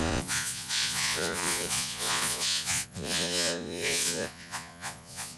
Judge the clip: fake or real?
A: fake